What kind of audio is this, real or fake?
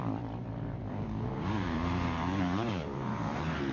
fake